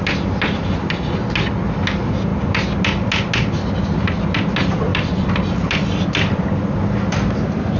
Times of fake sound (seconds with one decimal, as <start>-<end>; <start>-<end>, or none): none